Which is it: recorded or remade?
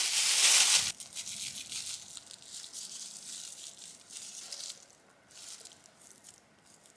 recorded